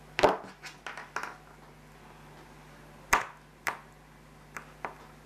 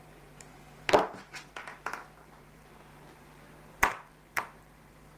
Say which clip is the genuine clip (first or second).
first